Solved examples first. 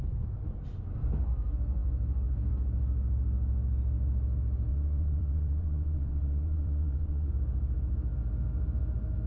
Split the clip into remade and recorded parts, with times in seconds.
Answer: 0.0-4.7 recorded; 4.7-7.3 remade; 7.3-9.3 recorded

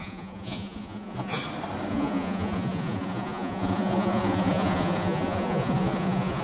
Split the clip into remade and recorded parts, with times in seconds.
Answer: 0.0-1.4 remade; 1.4-1.9 recorded; 1.9-6.4 remade

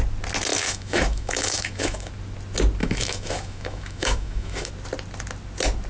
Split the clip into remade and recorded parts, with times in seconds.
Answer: 0.0-0.5 recorded; 0.5-2.1 remade; 2.1-2.8 recorded; 2.8-4.7 remade; 4.7-5.9 recorded

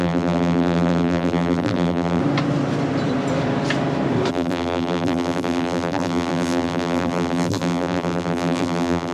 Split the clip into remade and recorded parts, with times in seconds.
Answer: 0.0-2.2 remade; 2.2-4.3 recorded; 4.3-9.1 remade

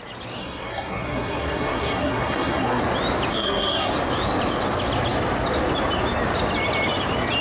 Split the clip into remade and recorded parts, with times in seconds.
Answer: 0.0-0.4 recorded; 0.4-2.8 remade; 2.8-3.3 recorded; 3.3-3.9 remade; 3.9-7.4 recorded